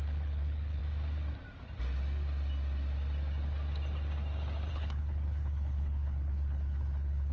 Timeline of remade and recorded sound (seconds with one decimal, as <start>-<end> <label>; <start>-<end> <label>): 0.0-0.8 remade; 0.8-4.7 recorded; 4.7-7.3 remade